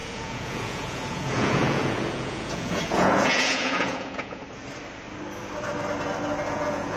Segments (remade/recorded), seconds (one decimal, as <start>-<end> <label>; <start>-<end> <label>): 0.0-4.4 remade; 4.4-6.5 recorded; 6.5-7.0 remade